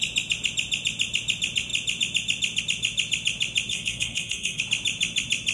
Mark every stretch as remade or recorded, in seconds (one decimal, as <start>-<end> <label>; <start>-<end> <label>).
0.0-3.7 recorded; 3.7-4.6 remade; 4.6-5.5 recorded